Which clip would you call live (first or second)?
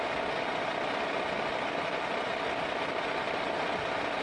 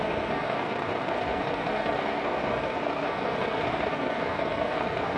first